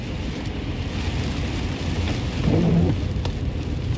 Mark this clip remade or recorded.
recorded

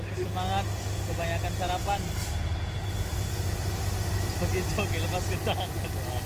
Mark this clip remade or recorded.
recorded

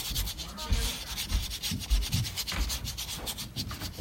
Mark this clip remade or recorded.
remade